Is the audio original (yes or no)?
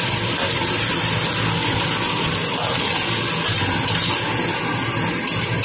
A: yes